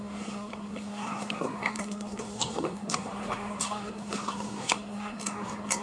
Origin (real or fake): fake